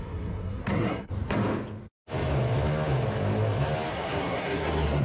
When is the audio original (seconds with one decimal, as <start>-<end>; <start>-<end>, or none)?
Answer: 1.1-3.9